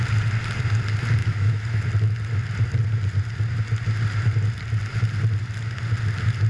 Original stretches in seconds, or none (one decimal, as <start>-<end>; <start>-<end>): 0.0-1.2; 1.8-6.5